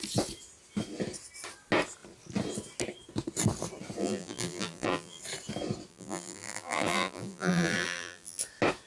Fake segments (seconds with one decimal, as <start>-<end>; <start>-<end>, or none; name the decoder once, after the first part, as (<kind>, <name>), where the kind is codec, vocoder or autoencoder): 4.0-5.2 (vocoder, BigVGAN v2); 5.9-8.4